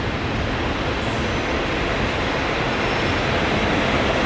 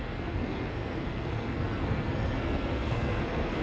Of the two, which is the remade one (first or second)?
second